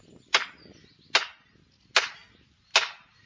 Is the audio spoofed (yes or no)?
no